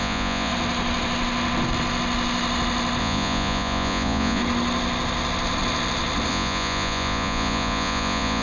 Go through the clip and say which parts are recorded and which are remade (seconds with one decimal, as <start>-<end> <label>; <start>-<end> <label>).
0.0-0.5 remade; 0.5-3.0 recorded; 3.0-4.4 remade; 4.4-6.3 recorded; 6.3-8.4 remade